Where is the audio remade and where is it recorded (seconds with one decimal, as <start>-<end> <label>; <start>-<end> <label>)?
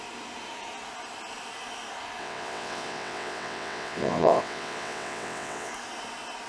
0.0-2.2 recorded; 2.2-5.7 remade; 5.7-6.5 recorded